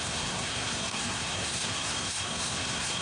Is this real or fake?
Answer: fake